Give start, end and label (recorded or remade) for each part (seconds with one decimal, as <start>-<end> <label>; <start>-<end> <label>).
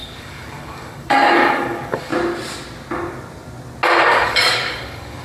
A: 0.0-2.1 remade; 2.1-4.0 recorded; 4.0-5.2 remade